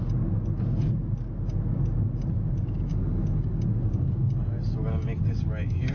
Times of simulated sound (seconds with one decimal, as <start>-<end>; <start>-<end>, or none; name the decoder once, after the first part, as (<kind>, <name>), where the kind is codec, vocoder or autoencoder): none